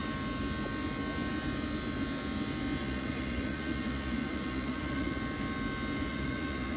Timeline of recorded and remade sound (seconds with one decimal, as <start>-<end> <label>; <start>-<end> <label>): 0.0-2.8 recorded; 2.8-5.2 remade; 5.2-6.1 recorded; 6.1-6.8 remade